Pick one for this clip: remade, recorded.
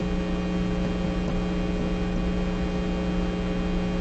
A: recorded